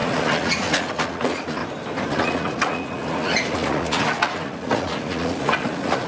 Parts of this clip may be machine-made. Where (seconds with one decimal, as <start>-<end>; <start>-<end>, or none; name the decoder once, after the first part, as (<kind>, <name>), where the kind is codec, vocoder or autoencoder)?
0.0-1.6 (vocoder, Vocos); 2.1-6.1